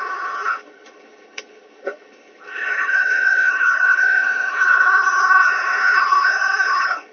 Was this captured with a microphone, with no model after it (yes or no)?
no